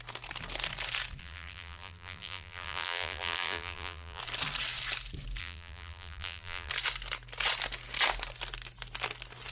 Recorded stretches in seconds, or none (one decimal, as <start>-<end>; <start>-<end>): 0.0-1.2; 4.2-5.4; 6.7-9.5